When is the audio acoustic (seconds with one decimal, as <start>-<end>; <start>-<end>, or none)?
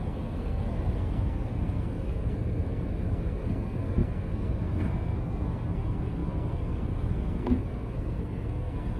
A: none